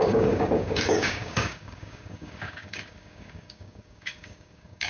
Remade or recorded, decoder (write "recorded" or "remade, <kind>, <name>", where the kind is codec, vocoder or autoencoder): remade, codec, DAC